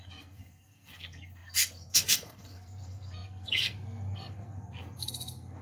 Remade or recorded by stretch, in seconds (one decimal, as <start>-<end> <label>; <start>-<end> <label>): 0.0-5.6 remade

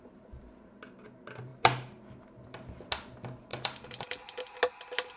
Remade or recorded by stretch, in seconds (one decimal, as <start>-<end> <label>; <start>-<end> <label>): 0.0-3.5 recorded; 3.5-4.2 remade; 4.2-5.2 recorded

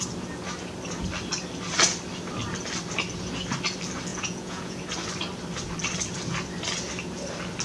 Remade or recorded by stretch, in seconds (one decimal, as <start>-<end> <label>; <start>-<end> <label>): 0.0-4.1 recorded; 4.1-4.8 remade; 4.8-7.6 recorded

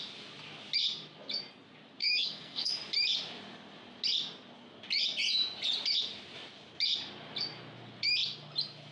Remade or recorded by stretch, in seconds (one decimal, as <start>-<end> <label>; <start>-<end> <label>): 0.0-2.0 recorded; 2.0-2.7 remade; 2.7-8.9 recorded

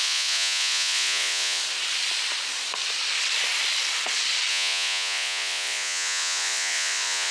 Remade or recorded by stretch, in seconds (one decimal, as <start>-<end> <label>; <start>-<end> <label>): 0.0-1.6 remade; 1.6-4.5 recorded; 4.5-7.3 remade